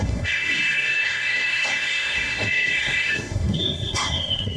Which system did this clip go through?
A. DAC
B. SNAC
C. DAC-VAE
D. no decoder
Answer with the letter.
B